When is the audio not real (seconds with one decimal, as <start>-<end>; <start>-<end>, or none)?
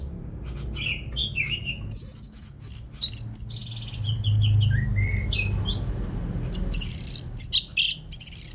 1.2-2.7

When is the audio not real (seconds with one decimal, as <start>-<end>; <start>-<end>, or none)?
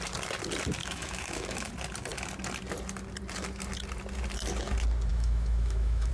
0.8-1.7; 5.1-6.1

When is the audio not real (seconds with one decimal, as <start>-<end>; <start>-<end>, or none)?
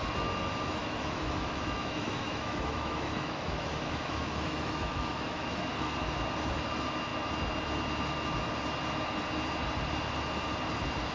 0.8-5.7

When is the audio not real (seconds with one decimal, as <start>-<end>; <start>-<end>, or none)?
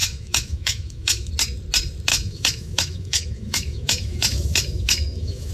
0.0-1.3; 2.1-5.5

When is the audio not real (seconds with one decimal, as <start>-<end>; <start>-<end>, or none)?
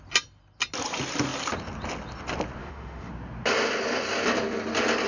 2.6-3.1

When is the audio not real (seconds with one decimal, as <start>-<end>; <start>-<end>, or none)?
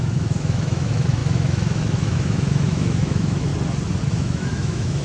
0.0-3.5; 4.1-5.0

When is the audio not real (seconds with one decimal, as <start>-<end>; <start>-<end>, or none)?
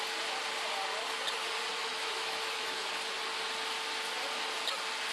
1.8-2.9